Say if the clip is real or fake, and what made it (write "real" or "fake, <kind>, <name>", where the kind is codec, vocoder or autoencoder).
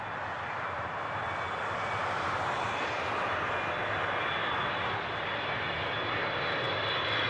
real